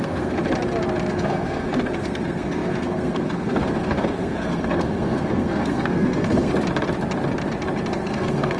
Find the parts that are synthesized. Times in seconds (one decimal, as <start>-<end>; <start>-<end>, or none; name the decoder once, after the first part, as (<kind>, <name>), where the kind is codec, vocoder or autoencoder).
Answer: 0.0-0.4 (codec, SNAC); 1.1-6.5; 7.9-8.6